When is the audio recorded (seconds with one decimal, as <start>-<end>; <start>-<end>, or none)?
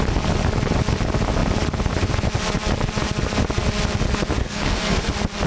0.0-4.4; 5.1-5.5